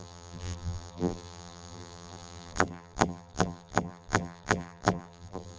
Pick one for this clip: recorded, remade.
remade